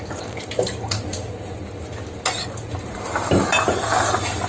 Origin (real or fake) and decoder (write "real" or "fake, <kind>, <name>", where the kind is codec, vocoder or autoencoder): real